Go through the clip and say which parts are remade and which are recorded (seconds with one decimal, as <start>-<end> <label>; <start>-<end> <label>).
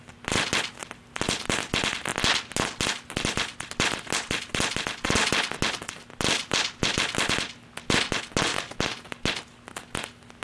0.0-10.4 recorded